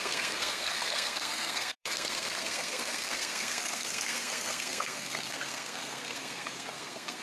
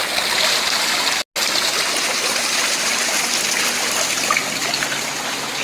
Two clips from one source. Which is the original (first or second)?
second